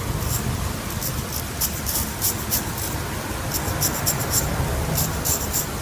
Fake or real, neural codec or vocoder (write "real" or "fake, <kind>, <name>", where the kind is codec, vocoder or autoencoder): real